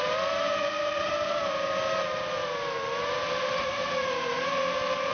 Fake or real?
fake